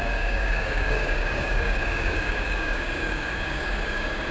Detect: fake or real fake